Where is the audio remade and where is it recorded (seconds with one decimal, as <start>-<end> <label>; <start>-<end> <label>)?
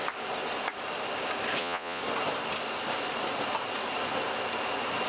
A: 0.0-1.6 recorded; 1.6-2.0 remade; 2.0-5.1 recorded